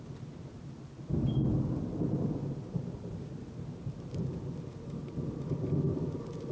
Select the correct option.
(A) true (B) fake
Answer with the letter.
A